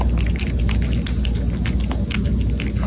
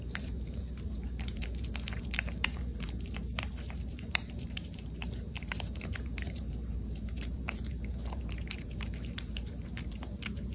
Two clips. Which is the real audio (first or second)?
first